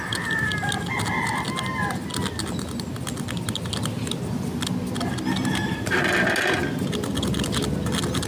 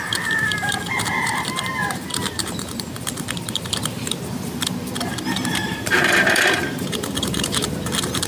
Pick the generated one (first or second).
second